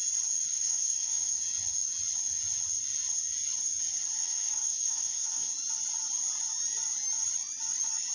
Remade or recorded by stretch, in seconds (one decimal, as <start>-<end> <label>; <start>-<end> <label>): 0.0-0.5 recorded; 0.5-1.4 remade; 1.4-4.2 recorded; 4.2-5.5 remade; 5.5-8.1 recorded